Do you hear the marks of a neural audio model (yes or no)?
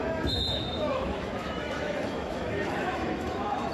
yes